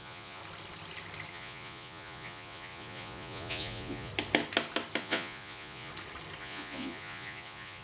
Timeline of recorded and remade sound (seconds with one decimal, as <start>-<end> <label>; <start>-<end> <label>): 0.0-0.4 remade; 0.4-1.3 recorded; 1.3-4.1 remade; 4.1-5.0 recorded; 5.0-5.9 remade; 5.9-6.4 recorded; 6.4-7.8 remade